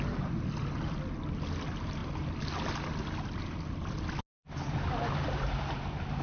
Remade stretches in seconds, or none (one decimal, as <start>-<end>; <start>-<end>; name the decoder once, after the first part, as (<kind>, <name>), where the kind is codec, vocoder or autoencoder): none